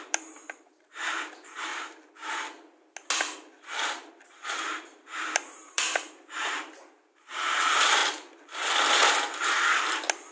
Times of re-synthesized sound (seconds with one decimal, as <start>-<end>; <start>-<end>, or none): 0.0-1.7; 4.1-8.0